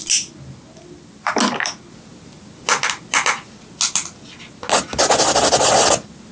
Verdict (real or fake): real